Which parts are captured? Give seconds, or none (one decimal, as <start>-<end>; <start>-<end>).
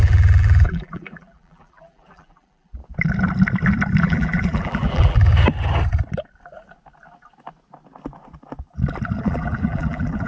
2.8-4.0; 5.3-9.2